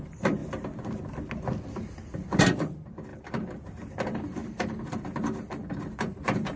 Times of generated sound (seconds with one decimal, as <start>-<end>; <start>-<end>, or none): 0.0-0.4; 2.4-6.6